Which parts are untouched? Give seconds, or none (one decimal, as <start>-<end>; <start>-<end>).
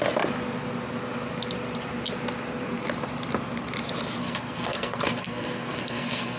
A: 0.0-4.2